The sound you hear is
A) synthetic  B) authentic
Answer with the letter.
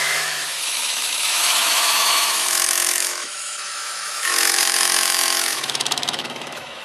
A